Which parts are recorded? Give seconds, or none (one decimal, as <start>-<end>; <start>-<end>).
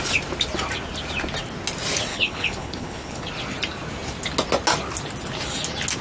0.0-2.1; 3.3-6.0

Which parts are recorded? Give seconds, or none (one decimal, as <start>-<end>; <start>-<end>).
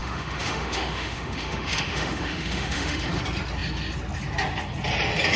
3.1-5.4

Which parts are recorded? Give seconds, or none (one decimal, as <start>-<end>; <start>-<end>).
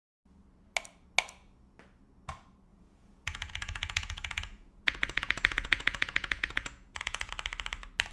0.0-2.7; 7.3-8.1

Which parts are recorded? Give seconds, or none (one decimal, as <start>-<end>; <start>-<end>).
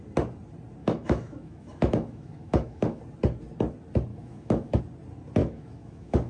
0.0-0.8; 3.0-4.1; 4.8-5.4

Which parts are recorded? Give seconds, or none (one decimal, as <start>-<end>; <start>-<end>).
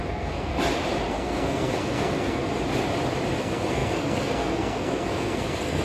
0.5-1.1; 2.4-3.4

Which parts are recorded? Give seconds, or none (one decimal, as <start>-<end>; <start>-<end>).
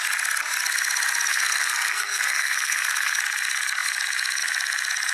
0.0-1.3; 3.2-5.1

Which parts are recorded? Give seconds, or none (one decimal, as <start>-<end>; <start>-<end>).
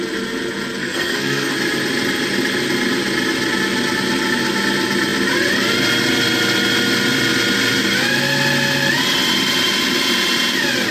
0.0-0.8; 1.5-10.9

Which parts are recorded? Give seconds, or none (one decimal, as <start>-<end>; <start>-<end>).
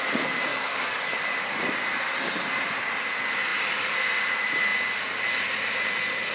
0.0-0.5; 1.5-6.3